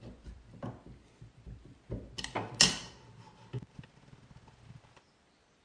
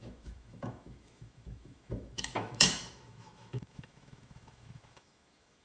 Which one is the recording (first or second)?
first